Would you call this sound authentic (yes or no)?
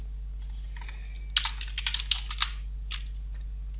yes